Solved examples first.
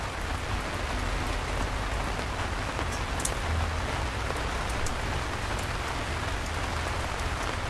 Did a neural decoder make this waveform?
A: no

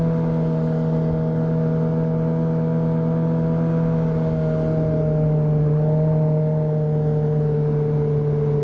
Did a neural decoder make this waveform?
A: no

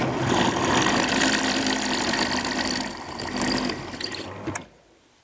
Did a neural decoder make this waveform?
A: no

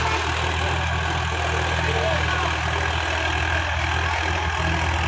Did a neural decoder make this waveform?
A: no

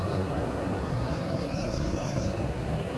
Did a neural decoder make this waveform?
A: yes